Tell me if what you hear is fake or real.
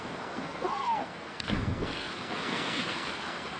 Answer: fake